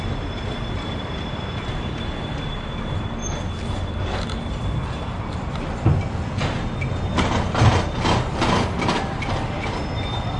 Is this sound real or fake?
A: real